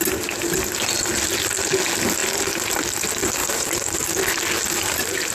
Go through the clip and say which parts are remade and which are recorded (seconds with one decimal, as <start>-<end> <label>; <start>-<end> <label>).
0.0-3.4 recorded; 3.4-4.1 remade; 4.1-5.3 recorded